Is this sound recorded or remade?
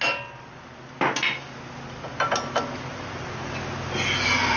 recorded